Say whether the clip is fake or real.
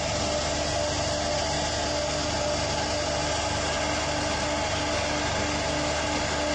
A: real